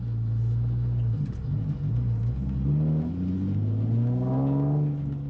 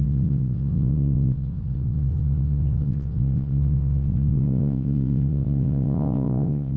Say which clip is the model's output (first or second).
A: second